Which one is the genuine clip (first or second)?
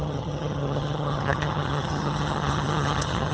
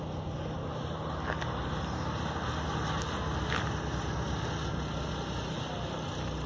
second